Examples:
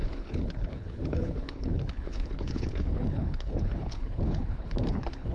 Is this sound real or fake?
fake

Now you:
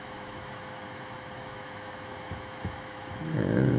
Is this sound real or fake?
fake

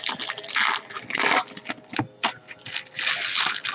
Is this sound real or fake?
real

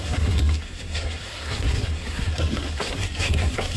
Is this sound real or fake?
fake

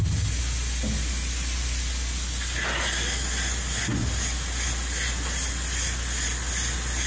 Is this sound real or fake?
real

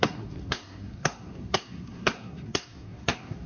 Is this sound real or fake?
fake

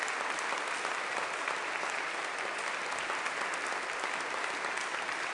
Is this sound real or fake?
real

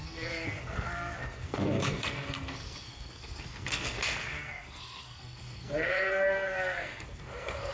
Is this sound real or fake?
fake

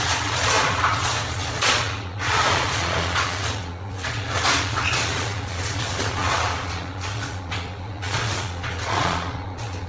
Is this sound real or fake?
fake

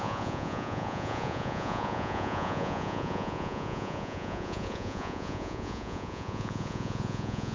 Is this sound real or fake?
fake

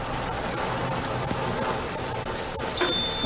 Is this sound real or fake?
real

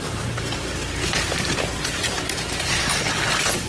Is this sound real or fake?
fake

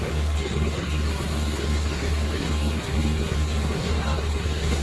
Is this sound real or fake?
fake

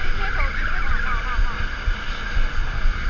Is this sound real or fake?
real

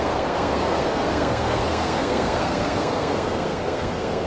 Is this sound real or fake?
fake